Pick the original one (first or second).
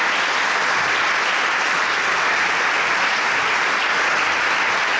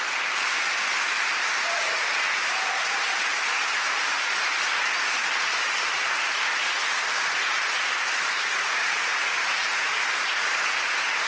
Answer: first